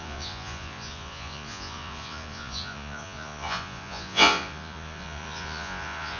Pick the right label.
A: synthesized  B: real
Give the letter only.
A